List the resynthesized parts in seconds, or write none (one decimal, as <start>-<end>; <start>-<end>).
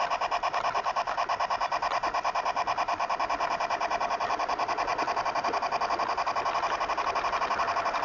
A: none